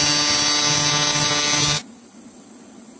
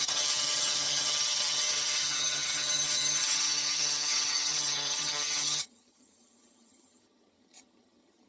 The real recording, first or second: first